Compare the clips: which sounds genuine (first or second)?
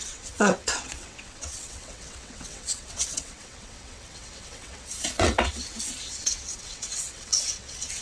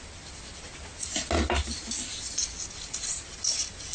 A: second